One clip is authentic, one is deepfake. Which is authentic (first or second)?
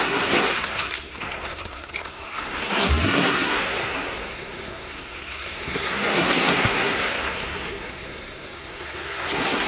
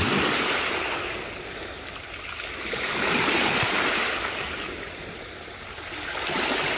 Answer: second